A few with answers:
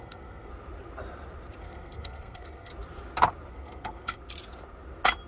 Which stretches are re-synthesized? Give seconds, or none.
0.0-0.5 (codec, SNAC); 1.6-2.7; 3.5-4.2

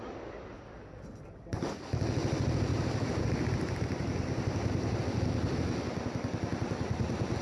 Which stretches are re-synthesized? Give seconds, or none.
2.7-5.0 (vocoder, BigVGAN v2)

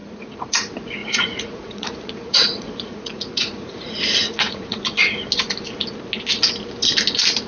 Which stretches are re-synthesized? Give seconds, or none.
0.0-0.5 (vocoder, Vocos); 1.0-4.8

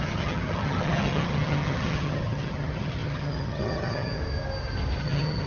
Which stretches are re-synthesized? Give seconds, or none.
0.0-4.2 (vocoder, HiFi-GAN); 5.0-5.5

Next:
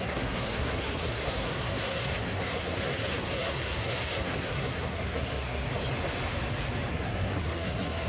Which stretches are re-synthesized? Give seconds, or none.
0.0-5.7 (codec, SNAC); 6.9-8.1

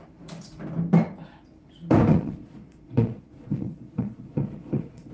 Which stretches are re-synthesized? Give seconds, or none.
2.1-5.1 (vocoder, Vocos)

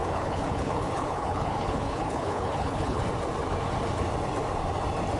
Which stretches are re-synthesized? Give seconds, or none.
0.0-3.0 (codec, HILCodec)